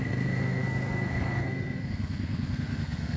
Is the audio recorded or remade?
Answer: remade